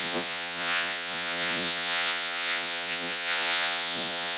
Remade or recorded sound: remade